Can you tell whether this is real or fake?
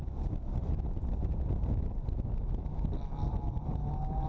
real